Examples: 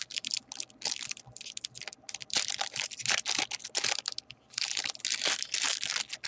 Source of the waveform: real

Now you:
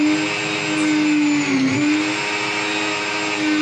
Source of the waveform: real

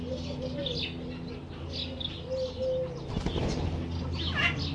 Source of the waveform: real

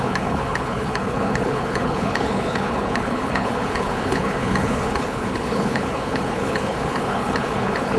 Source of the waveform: fake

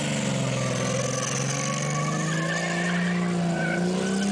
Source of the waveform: real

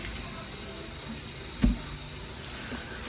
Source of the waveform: real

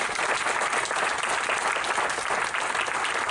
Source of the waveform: real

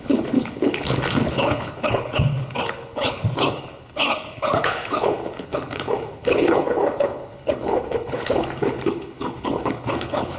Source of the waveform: fake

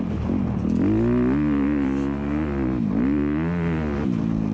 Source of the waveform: real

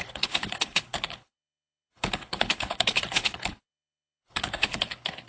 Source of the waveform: fake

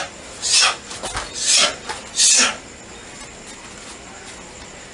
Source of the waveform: real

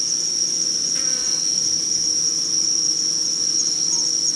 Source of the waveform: real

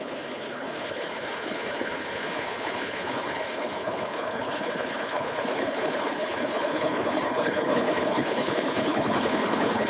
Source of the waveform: fake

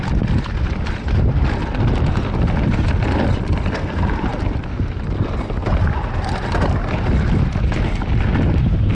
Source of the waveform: real